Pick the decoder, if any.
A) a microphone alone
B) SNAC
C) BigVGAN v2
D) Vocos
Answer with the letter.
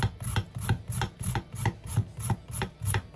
A